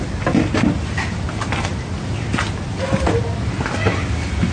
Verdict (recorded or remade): recorded